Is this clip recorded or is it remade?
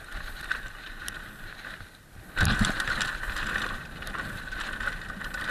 recorded